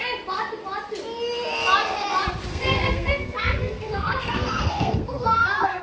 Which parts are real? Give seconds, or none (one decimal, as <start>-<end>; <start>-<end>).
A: 0.0-2.5